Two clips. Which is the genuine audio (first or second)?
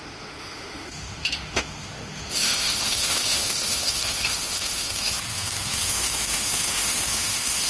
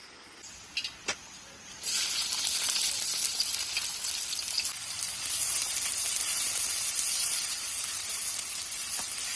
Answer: second